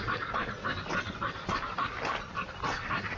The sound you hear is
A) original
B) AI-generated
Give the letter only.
A